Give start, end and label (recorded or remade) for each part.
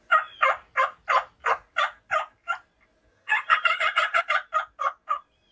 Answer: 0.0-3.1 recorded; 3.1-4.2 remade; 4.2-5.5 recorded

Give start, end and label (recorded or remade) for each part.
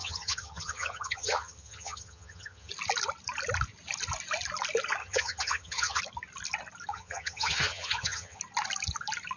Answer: 0.0-2.7 remade; 2.7-5.0 recorded; 5.0-6.0 remade; 6.0-6.9 recorded; 6.9-8.4 remade; 8.4-9.4 recorded